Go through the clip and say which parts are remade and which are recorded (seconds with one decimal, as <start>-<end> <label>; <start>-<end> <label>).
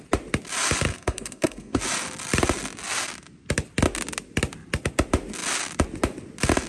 0.0-0.9 recorded; 0.9-1.8 remade; 1.8-6.7 recorded